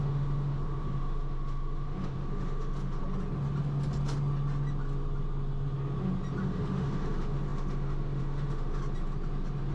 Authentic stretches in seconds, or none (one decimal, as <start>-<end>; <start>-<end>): 3.0-6.4; 8.8-9.7